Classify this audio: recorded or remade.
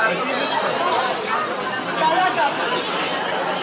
recorded